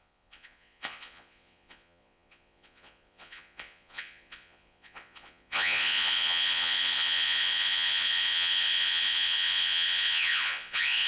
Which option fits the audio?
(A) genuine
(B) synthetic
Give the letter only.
B